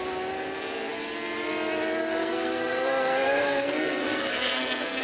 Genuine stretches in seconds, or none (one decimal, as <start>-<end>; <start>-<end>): 0.0-2.0